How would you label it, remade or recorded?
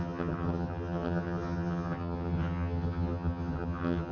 remade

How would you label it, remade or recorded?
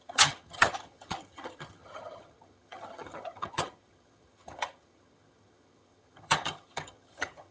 remade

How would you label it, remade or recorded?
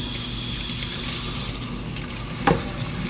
recorded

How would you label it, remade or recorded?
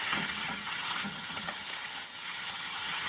remade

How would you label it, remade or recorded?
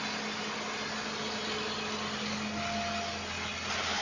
recorded